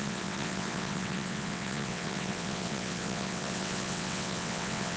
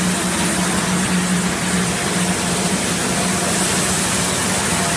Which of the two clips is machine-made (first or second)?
first